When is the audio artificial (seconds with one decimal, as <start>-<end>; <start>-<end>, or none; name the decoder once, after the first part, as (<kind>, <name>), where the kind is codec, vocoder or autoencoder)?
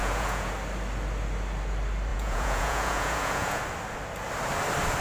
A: 0.0-0.5 (vocoder, Vocos); 2.1-3.6